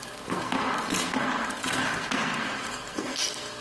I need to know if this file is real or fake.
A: fake